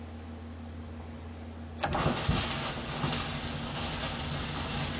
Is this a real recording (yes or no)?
yes